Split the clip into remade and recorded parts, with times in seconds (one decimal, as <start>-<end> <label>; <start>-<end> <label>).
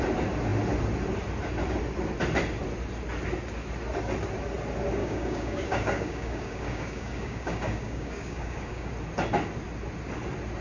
0.0-5.0 recorded; 5.0-8.9 remade; 8.9-10.6 recorded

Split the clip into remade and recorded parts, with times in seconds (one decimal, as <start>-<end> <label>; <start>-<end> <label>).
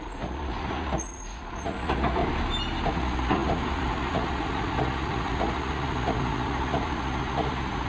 0.0-2.2 remade; 2.2-2.9 recorded; 2.9-7.9 remade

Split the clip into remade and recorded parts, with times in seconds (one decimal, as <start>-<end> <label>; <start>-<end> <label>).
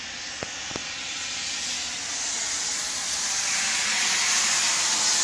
0.0-0.8 recorded; 0.8-1.5 remade; 1.5-5.2 recorded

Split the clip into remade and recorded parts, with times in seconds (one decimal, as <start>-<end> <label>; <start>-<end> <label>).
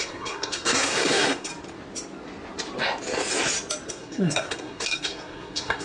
0.0-1.5 remade; 1.5-3.9 recorded; 3.9-5.8 remade